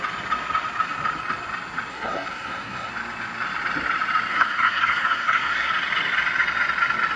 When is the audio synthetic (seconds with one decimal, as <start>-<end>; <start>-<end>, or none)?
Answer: 1.9-2.9; 4.3-5.7